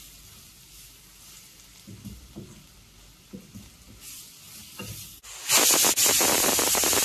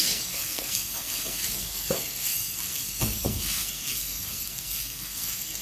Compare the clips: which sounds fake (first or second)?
second